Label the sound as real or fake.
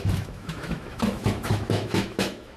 fake